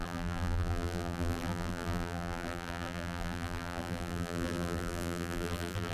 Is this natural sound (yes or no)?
no